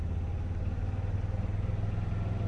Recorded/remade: recorded